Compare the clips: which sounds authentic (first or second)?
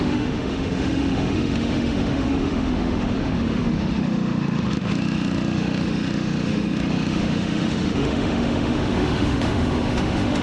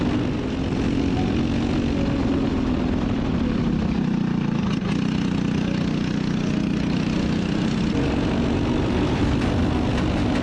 second